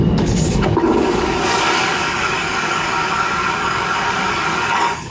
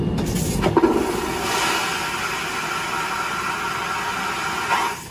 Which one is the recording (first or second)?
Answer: second